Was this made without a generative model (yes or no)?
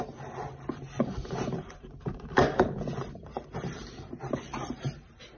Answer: no